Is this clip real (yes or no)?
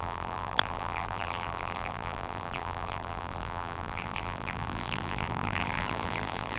no